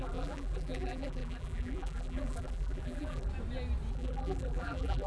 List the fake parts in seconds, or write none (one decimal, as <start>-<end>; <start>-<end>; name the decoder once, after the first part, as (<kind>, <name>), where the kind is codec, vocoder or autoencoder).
0.0-3.3 (vocoder, BigVGAN v2); 3.9-5.1